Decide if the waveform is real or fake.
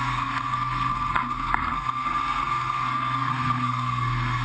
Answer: fake